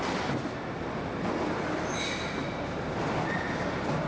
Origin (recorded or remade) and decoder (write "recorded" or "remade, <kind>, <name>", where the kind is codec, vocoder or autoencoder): recorded